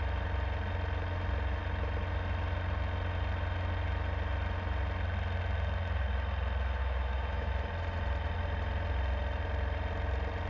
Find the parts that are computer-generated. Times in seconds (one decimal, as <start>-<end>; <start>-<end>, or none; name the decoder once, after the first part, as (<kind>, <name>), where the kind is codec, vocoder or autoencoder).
6.8-7.5 (autoencoder, DAC-VAE)